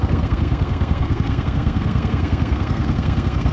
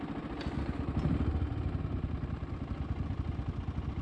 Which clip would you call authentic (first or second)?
second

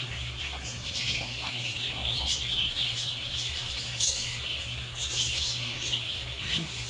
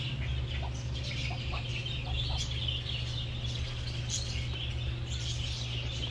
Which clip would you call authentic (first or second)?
second